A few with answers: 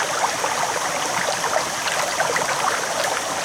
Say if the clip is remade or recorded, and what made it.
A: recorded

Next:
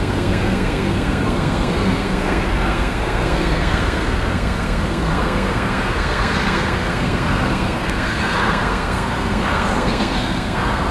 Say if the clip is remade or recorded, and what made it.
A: remade, codec, SNAC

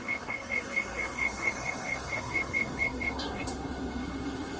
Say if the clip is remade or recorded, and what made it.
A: remade, codec, SNAC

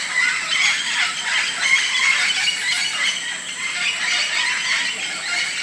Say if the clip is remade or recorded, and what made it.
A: recorded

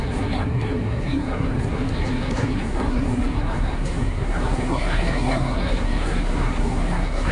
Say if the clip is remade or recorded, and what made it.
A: remade, codec, SNAC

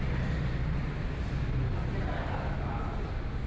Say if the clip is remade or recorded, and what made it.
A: recorded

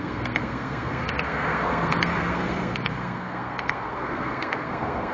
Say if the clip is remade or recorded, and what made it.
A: remade, codec, SNAC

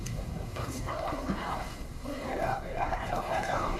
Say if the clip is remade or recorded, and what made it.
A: remade, codec, SNAC